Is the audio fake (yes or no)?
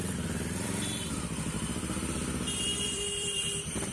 yes